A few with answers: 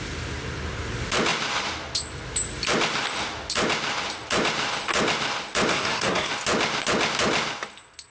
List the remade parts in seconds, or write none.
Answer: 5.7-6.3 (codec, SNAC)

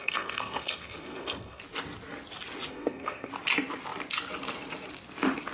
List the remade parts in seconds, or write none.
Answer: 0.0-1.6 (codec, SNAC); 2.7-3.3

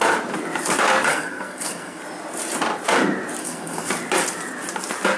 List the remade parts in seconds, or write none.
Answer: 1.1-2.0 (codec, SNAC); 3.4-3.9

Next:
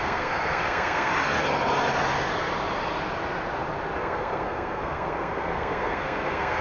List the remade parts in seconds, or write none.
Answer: 0.0-1.1 (codec, SNAC); 4.0-6.6

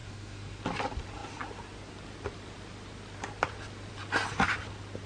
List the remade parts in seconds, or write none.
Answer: 0.0-0.6 (codec, SNAC)

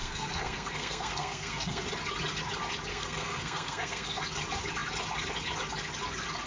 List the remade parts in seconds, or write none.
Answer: 0.0-1.9 (codec, SNAC); 2.9-4.2

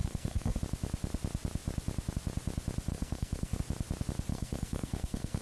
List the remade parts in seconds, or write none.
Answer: 0.0-0.6 (codec, SNAC); 2.9-3.6; 4.3-5.4